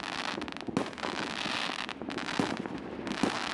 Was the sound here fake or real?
real